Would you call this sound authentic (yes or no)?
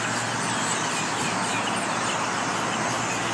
yes